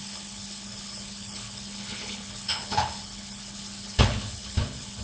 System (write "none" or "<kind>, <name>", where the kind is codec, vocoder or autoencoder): codec, HILCodec